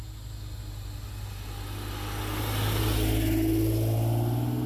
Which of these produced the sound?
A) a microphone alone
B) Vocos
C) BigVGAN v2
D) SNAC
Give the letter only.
A